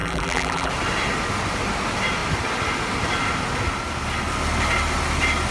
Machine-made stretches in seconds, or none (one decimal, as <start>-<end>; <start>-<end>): 0.0-0.7